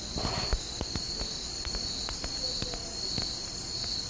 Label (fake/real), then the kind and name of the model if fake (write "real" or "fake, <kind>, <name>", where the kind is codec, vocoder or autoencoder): real